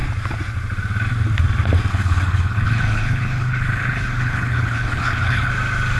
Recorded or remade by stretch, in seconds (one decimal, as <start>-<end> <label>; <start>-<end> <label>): 0.0-1.9 recorded; 1.9-5.5 remade; 5.5-6.0 recorded